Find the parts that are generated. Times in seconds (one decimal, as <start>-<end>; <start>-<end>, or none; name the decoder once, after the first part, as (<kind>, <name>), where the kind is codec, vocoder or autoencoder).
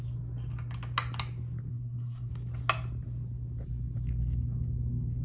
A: 1.7-2.3 (codec, SNAC)